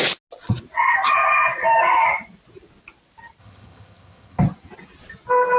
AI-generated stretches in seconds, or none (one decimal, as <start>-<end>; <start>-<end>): 3.4-4.4